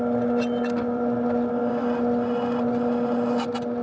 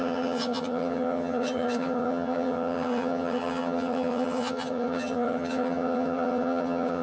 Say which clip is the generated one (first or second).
second